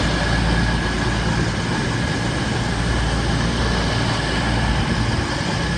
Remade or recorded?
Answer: recorded